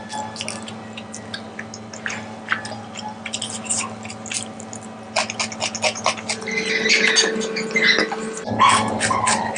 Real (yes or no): yes